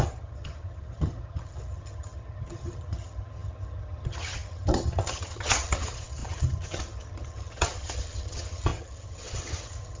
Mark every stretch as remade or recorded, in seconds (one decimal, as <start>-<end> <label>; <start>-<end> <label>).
0.0-10.0 remade